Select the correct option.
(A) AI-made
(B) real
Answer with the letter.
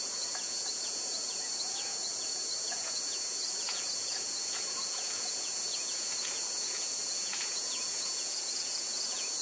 A